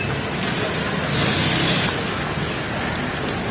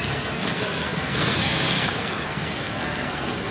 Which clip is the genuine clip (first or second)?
first